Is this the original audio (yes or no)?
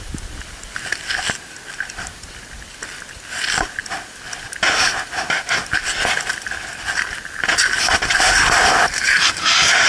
yes